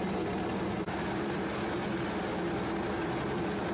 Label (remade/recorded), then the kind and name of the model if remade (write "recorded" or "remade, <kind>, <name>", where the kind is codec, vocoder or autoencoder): recorded